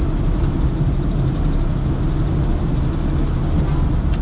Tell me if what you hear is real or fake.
real